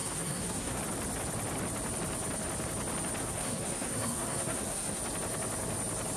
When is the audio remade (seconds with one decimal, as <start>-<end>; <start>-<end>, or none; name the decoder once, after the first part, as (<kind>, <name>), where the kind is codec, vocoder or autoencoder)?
0.0-0.8 (codec, SNAC); 3.2-5.0